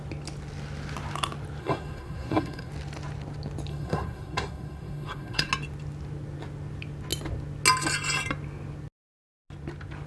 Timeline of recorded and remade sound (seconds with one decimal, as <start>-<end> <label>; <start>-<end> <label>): 0.0-1.6 recorded; 1.6-2.7 remade; 2.7-3.7 recorded; 3.7-5.5 remade; 5.5-10.1 recorded